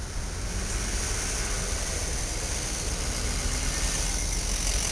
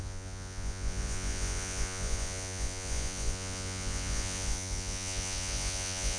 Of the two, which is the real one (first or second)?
first